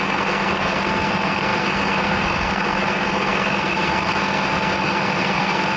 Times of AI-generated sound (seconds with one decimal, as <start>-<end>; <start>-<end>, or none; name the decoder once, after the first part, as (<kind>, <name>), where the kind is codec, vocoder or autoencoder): 0.0-5.8 (codec, SNAC)

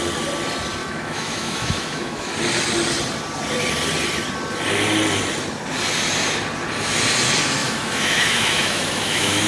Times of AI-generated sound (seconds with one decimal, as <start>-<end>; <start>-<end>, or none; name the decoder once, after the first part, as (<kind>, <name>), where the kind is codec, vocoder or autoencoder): 0.8-2.3 (autoencoder, DAC-VAE); 7.6-9.5

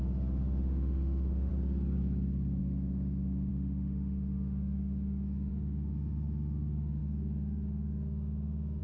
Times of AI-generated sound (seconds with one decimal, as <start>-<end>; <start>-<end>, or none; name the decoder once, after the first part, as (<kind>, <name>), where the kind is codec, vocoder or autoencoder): 0.0-1.5 (autoencoder, DAC-VAE); 2.6-8.8

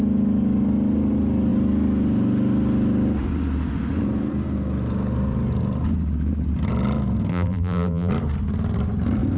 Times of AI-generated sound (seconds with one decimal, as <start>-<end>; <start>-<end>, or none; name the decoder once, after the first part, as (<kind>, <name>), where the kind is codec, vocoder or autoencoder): 7.3-8.1 (vocoder, BigVGAN v2)

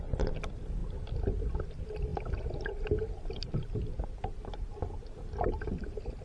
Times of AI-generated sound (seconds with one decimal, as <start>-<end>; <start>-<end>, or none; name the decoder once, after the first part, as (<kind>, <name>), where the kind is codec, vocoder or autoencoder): none

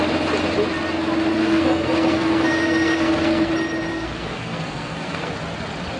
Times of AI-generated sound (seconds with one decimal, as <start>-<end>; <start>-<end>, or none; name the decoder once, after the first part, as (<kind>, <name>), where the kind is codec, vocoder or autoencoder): 1.4-3.5 (codec, SNAC); 3.9-5.3

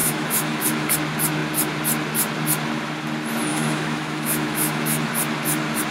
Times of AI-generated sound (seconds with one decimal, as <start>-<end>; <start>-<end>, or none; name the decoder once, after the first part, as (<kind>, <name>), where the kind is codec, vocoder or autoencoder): 0.0-0.9 (autoencoder, DAC-VAE); 3.5-5.1

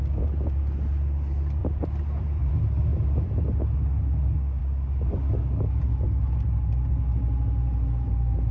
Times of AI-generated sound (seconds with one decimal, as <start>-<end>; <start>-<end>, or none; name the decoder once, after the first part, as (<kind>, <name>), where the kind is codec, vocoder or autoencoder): 1.6-2.5 (vocoder, BigVGAN v2); 2.9-3.4